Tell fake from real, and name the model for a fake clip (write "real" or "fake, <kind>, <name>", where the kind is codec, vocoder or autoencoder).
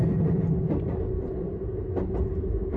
real